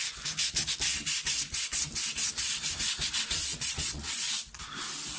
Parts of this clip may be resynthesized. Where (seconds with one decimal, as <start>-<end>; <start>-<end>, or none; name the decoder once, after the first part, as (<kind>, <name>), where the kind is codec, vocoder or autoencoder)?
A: 3.5-4.3 (vocoder, Vocos)